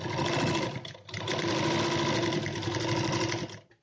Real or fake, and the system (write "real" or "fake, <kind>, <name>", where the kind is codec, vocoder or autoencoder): real